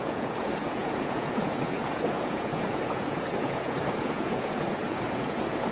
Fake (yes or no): yes